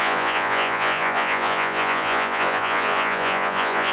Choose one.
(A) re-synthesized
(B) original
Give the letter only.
A